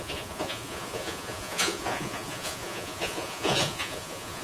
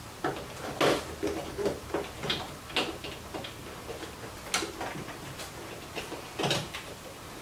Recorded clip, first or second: second